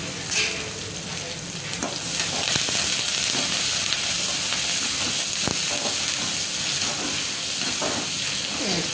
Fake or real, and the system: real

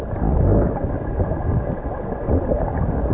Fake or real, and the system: real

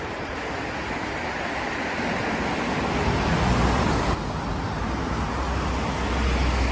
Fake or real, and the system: real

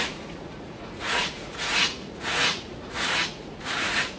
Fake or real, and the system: fake, vocoder, Vocos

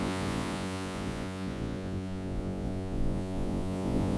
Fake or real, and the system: fake, vocoder, Vocos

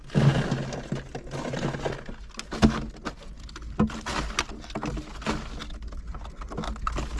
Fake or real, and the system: real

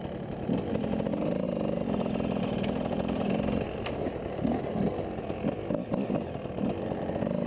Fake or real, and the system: real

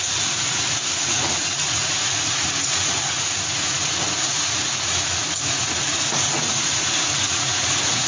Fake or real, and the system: fake, vocoder, Vocos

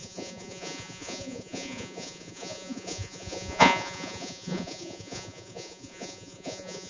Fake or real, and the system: fake, vocoder, Vocos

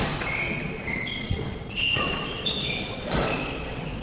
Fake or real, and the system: fake, vocoder, Vocos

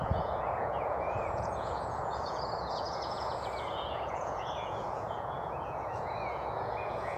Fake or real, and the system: fake, vocoder, Vocos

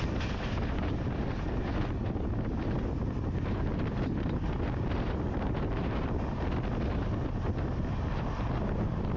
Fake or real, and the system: real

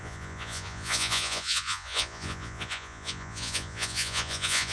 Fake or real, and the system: fake, vocoder, Vocos